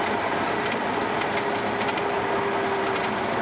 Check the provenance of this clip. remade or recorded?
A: recorded